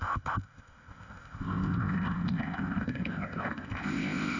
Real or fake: fake